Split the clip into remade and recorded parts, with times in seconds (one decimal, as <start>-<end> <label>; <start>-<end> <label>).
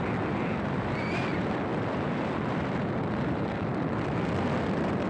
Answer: 0.0-5.1 recorded